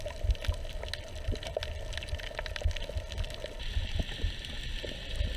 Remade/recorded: recorded